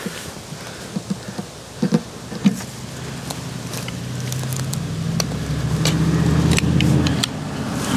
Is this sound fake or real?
real